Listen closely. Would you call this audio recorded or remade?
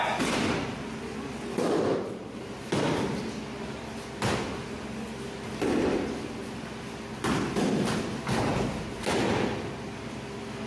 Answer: recorded